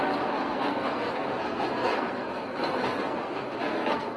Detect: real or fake fake